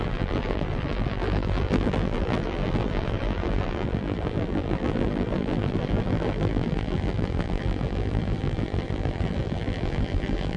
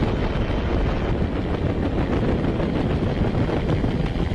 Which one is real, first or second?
second